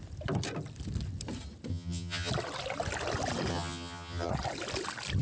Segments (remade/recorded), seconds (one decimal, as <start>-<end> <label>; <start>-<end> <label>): 0.0-1.7 recorded; 1.7-2.3 remade; 2.3-3.5 recorded; 3.5-4.3 remade; 4.3-5.2 recorded